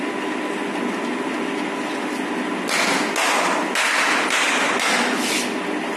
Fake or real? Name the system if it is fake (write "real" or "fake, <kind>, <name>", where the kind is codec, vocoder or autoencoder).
real